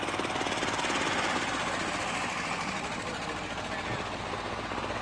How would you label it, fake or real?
real